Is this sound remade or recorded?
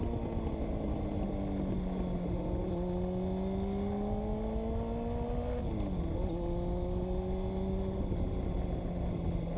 recorded